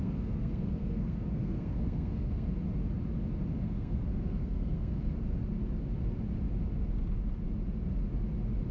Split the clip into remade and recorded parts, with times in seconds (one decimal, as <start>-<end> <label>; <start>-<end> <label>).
0.0-2.5 remade; 2.5-3.6 recorded; 3.6-5.1 remade; 5.1-8.7 recorded